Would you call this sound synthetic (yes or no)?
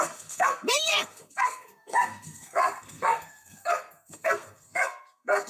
yes